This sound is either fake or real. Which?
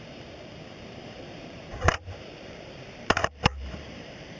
fake